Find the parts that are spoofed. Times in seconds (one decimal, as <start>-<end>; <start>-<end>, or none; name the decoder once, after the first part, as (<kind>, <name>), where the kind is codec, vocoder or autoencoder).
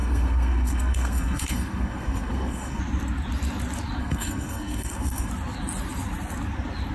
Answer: 0.0-2.8 (codec, SNAC); 4.0-5.3